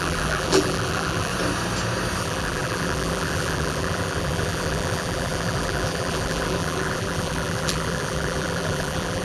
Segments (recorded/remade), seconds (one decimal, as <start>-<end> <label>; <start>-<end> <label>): 0.0-1.3 remade; 1.3-2.2 recorded; 2.2-9.2 remade